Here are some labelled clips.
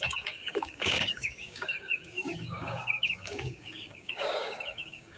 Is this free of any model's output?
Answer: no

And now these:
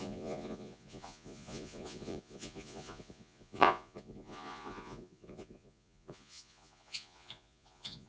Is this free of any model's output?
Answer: no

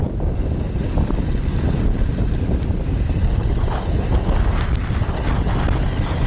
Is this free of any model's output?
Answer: yes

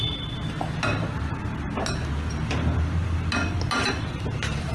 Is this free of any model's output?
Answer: yes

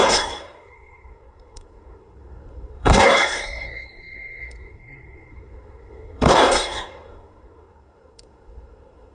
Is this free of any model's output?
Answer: no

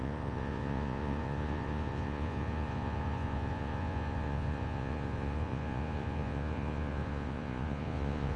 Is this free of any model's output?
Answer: no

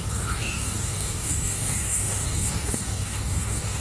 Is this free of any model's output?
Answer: no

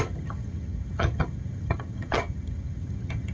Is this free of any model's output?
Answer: no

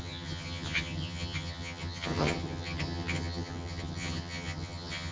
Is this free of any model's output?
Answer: no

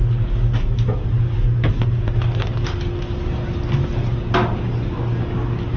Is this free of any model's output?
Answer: yes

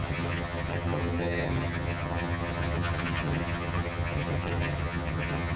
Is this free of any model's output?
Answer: no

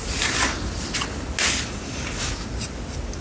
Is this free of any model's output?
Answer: yes